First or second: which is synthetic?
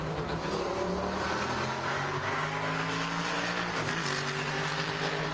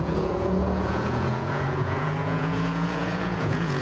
second